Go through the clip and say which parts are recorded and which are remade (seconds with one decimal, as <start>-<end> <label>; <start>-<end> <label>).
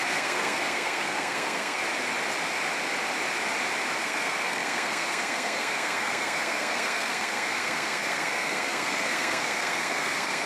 0.0-1.8 remade; 1.8-4.0 recorded; 4.0-10.5 remade